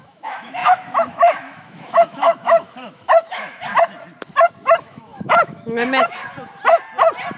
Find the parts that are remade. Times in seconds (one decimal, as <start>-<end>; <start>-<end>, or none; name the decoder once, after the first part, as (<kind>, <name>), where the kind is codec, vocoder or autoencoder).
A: 0.0-3.7 (autoencoder, DAC-VAE); 4.8-6.2